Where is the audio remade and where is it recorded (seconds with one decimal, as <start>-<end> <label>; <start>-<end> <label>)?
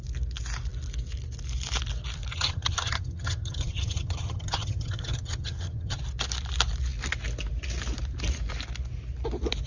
0.0-2.3 recorded; 2.3-6.0 remade; 6.0-9.7 recorded